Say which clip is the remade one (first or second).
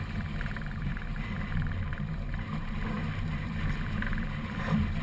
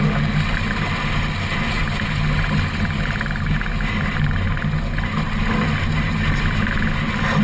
first